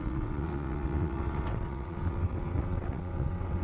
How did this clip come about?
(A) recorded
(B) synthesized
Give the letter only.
B